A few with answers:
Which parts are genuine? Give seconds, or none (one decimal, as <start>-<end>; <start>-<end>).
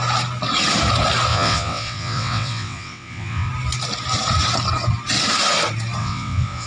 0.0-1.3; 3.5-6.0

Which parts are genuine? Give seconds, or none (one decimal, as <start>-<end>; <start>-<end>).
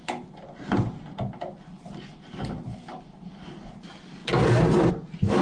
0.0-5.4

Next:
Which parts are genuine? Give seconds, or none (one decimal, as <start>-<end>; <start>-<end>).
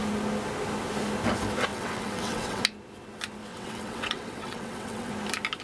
0.0-1.7; 2.6-3.5; 5.1-5.6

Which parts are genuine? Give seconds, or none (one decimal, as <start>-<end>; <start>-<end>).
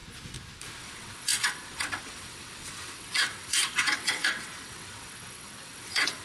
0.0-0.8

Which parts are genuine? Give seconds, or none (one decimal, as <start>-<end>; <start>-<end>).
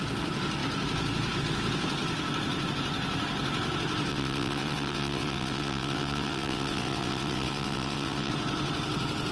0.0-4.1; 8.3-9.3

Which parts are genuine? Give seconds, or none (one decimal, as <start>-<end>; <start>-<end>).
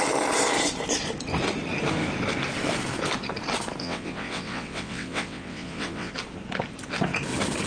0.0-3.8; 6.1-7.7